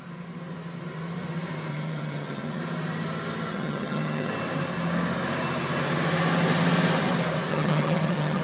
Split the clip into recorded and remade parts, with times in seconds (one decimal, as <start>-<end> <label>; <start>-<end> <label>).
0.0-1.7 recorded; 1.7-2.6 remade; 2.6-3.5 recorded; 3.5-4.3 remade; 4.3-7.5 recorded; 7.5-8.4 remade